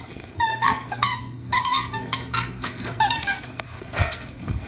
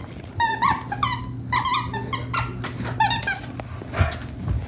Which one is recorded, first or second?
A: second